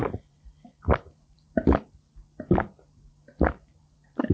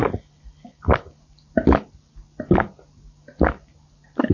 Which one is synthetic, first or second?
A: first